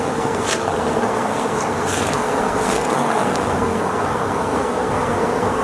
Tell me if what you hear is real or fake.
fake